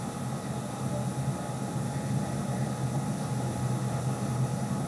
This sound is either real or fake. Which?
real